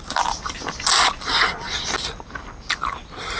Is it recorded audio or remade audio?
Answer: recorded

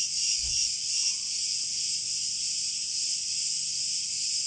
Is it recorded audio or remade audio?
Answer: recorded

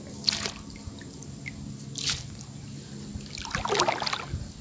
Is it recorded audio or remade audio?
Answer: recorded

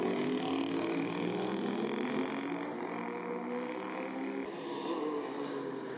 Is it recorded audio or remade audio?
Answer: recorded